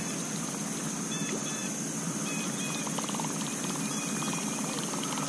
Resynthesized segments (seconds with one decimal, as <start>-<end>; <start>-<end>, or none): none